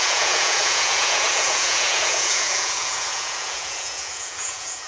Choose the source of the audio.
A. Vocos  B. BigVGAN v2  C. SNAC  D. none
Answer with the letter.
A